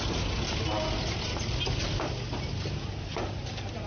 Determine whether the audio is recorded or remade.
recorded